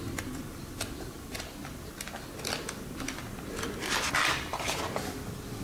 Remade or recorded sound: recorded